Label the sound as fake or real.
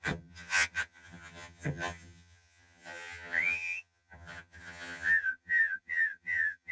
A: fake